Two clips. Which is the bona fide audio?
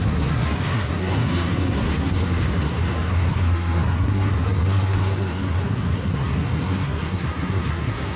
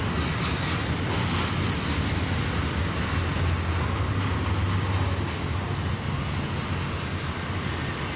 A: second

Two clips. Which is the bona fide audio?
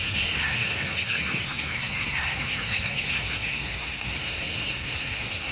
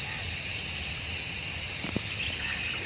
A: second